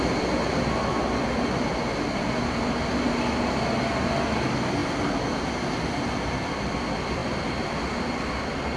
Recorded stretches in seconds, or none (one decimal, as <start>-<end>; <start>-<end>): 0.0-7.2; 7.8-8.8